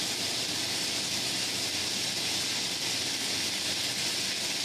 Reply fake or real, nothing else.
real